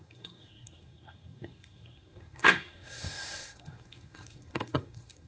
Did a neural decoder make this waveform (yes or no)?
yes